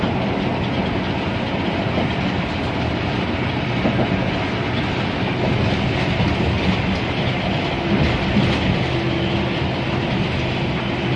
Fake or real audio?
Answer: real